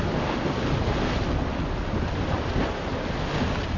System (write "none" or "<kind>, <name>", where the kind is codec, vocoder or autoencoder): none